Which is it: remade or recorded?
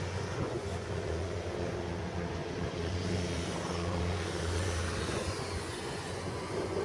remade